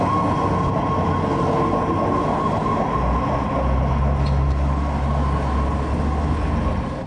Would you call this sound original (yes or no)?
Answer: yes